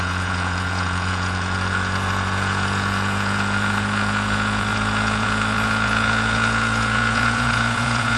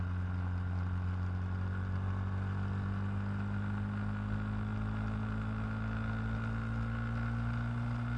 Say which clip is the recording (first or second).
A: second